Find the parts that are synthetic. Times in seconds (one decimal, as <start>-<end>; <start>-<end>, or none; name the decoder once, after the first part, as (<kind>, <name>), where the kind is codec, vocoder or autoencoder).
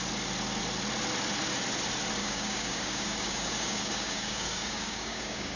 2.2-5.6 (codec, DAC)